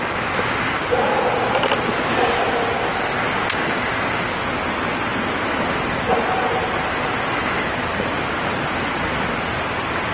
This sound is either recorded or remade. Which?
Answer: recorded